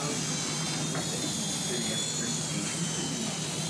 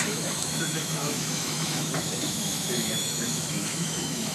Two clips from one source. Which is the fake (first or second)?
second